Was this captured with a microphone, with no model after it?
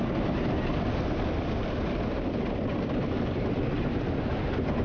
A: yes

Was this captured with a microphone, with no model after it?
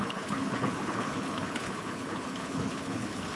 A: no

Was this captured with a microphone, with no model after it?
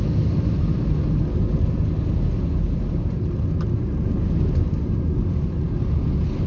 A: yes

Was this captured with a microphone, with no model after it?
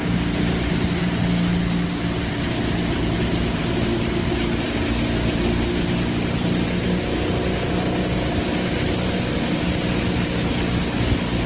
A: yes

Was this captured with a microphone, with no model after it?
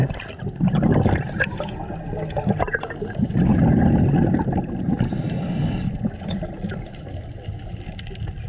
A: yes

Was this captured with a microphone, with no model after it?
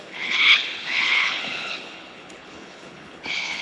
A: no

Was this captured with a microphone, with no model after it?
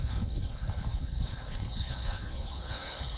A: no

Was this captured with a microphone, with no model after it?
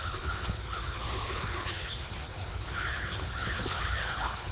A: no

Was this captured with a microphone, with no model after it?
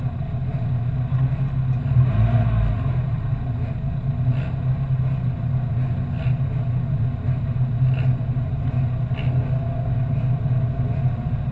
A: yes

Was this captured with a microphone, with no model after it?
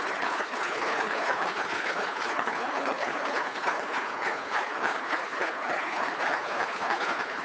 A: no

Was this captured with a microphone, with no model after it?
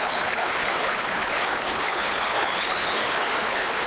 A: no